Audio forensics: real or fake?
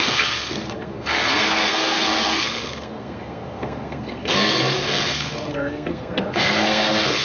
fake